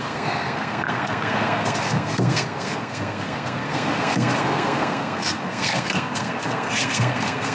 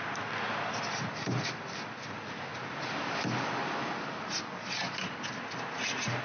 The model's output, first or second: first